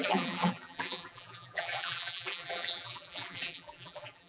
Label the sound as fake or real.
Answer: fake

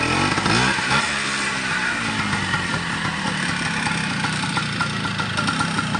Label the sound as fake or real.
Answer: real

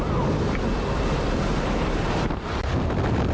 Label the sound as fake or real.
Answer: real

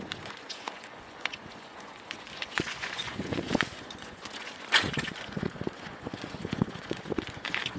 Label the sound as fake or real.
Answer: fake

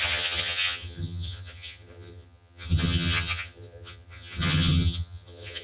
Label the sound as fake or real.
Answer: fake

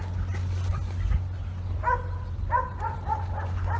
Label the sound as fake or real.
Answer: real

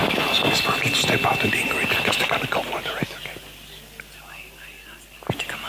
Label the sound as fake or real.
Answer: real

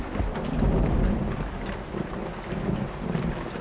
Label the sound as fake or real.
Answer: real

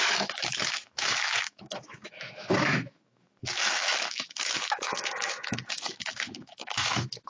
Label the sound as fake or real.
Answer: fake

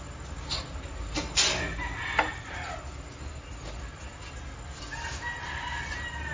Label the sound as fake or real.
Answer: real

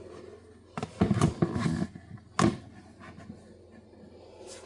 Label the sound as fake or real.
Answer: real